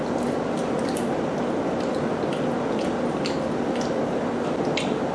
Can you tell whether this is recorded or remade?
recorded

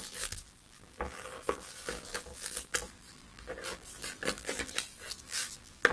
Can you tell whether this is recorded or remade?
remade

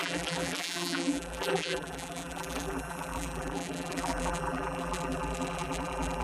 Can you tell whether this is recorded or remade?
remade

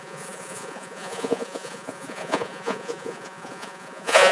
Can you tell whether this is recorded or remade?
remade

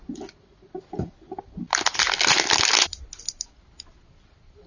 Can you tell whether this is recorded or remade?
recorded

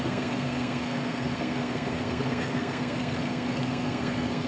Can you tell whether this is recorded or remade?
remade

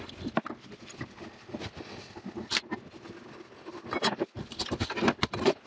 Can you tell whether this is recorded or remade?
recorded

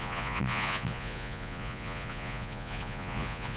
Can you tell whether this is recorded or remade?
remade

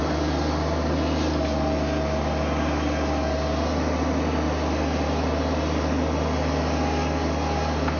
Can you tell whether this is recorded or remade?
recorded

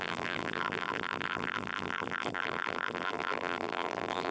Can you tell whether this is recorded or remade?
remade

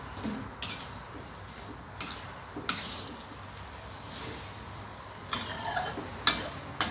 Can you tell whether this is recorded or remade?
recorded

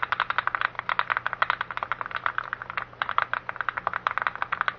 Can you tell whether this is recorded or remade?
recorded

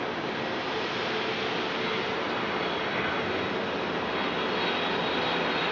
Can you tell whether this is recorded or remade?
recorded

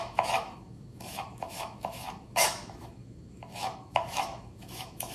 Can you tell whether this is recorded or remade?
remade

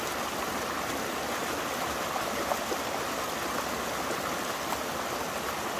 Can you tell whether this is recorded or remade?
recorded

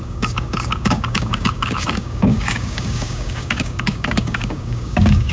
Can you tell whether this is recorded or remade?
remade